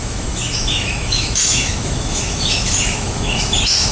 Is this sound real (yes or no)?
no